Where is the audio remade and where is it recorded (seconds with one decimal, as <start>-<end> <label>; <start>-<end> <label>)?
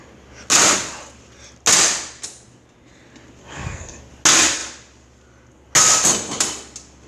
0.0-3.4 recorded; 3.4-4.1 remade; 4.1-7.1 recorded